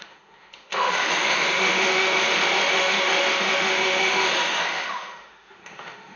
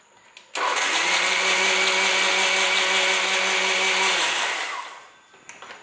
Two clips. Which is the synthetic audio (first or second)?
first